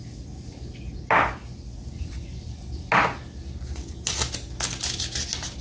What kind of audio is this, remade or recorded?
recorded